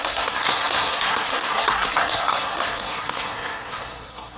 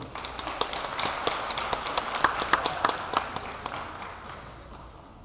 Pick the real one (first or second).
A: second